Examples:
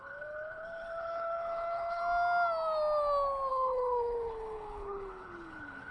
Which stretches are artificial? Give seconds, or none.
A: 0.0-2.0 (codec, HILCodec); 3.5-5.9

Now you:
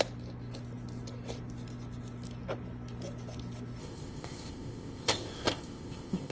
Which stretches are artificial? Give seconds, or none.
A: 3.8-6.3 (codec, ZipCodec)

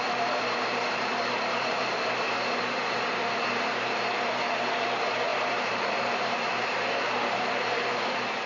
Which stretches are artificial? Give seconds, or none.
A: 0.0-8.5 (vocoder, BigVGAN v2)

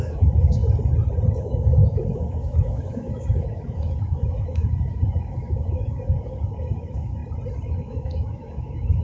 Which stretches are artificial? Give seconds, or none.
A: 0.0-0.6 (autoencoder, DAC-VAE); 1.4-7.2; 7.7-9.0

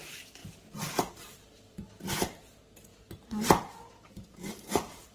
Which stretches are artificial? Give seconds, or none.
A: 0.0-2.9 (vocoder, BigVGAN v2); 3.6-5.1